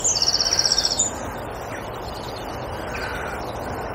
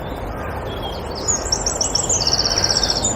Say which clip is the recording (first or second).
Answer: second